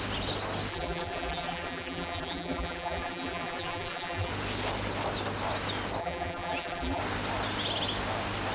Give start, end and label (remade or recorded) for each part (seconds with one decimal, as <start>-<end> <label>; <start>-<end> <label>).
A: 0.0-0.7 recorded; 0.7-4.3 remade; 4.3-6.0 recorded; 6.0-7.0 remade; 7.0-8.5 recorded